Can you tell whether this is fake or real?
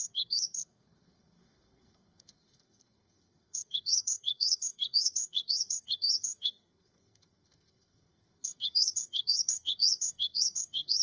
fake